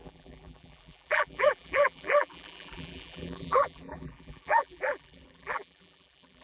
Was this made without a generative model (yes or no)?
no